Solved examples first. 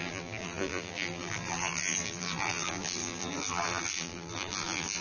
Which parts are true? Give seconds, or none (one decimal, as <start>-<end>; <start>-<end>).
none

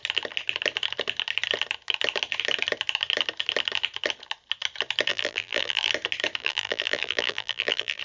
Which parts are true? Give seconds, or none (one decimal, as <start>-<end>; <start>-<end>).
0.0-5.1; 5.9-6.4

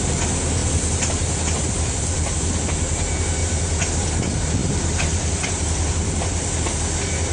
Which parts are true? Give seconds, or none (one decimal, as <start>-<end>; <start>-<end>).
0.0-0.6; 2.5-3.4; 3.9-4.6; 5.9-7.3